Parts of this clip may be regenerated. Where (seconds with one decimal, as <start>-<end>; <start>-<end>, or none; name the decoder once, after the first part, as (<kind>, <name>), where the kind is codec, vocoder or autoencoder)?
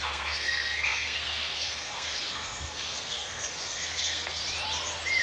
0.0-4.4 (codec, SNAC)